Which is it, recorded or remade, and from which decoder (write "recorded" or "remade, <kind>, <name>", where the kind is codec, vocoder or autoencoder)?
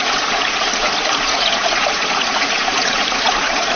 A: remade, vocoder, Vocos